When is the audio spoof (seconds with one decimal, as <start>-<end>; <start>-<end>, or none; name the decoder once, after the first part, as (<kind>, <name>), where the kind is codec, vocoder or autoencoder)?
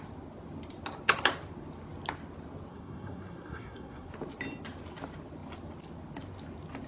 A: 2.7-4.1 (codec, SNAC)